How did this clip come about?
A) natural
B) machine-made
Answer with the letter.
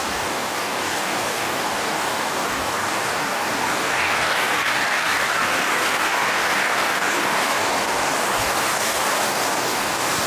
B